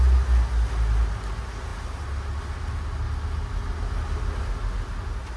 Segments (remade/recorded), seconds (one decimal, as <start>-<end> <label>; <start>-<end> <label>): 0.0-5.4 recorded